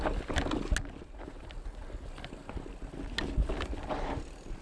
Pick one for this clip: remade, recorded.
recorded